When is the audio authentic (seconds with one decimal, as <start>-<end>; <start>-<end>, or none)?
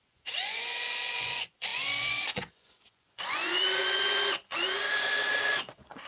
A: none